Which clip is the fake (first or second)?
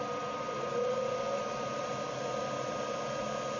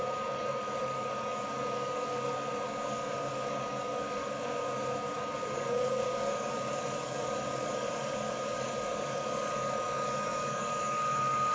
second